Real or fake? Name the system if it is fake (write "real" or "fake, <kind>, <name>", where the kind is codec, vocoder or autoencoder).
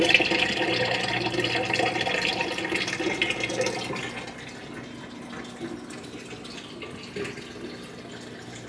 real